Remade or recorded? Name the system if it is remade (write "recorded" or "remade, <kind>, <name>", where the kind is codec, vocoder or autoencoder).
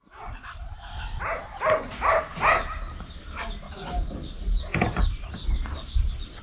recorded